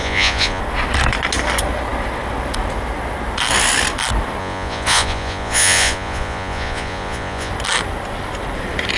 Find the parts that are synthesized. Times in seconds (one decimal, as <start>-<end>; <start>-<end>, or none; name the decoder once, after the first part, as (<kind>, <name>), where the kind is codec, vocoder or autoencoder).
0.0-0.6 (vocoder, Vocos); 4.4-7.5